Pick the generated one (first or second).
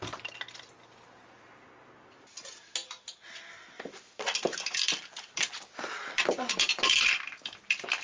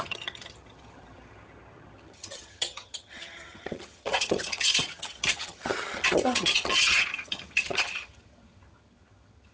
second